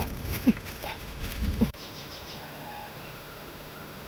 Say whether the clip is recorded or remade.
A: remade